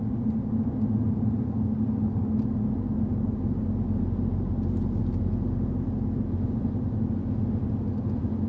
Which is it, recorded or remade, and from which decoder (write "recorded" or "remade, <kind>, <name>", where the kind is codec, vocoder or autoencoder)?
recorded